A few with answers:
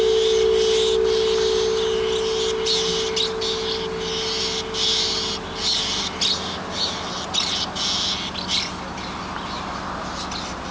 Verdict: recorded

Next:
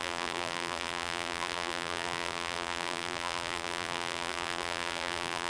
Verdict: remade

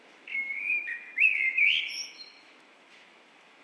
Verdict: remade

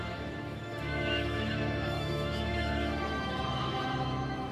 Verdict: remade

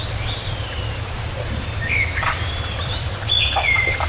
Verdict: remade